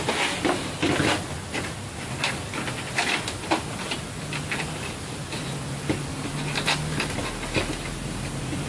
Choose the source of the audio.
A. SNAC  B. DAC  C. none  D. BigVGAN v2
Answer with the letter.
C